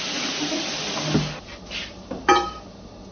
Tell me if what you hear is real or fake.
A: real